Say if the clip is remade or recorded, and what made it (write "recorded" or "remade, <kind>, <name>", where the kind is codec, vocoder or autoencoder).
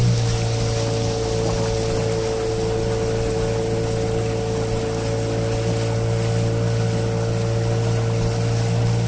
recorded